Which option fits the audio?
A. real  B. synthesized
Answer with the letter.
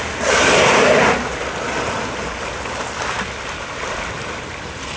A